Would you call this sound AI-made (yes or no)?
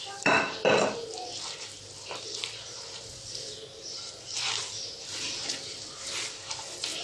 yes